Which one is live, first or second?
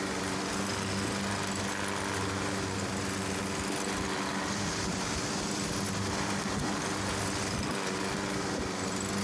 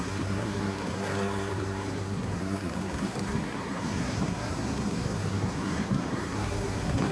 first